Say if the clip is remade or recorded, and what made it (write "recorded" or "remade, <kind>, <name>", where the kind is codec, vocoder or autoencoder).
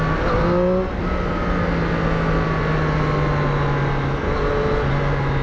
recorded